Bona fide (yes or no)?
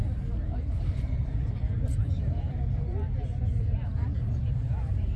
no